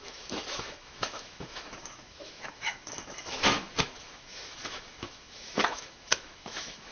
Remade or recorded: remade